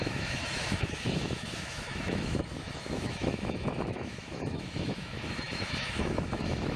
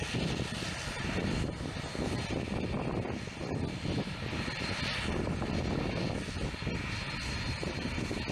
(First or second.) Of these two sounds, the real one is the second